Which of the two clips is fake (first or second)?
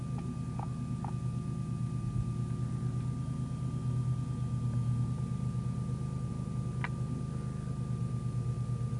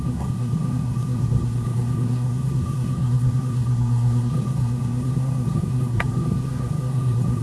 second